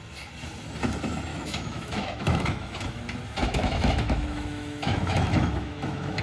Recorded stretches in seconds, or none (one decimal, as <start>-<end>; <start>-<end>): 0.0-1.3; 3.0-3.4